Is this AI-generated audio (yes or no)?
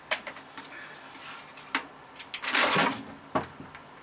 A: no